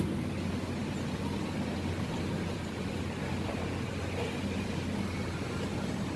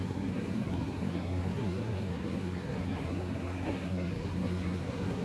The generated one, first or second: second